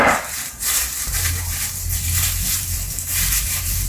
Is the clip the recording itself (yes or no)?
no